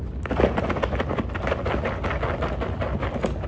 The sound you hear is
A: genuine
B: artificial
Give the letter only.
A